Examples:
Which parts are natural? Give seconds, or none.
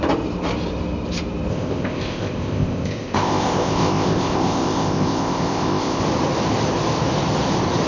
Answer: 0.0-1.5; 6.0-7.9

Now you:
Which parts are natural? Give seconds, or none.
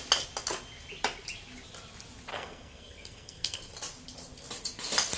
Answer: 0.0-2.3; 3.7-5.2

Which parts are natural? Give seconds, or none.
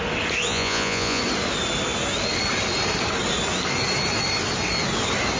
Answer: 0.0-0.5; 1.2-5.4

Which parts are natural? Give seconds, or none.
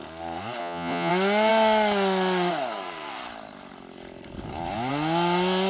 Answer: 0.0-0.6; 1.1-5.7